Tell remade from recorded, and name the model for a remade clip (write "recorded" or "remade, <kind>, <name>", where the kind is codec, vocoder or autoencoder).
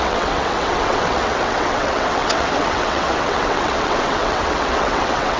remade, vocoder, WaveNeXt